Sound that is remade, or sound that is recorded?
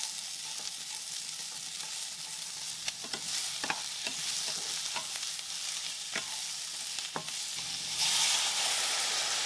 recorded